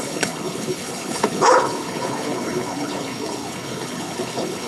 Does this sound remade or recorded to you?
remade